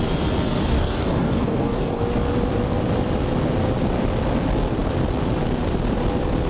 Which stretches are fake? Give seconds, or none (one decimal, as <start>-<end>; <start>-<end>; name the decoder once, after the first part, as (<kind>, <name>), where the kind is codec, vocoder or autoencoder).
0.6-2.0 (codec, DAC)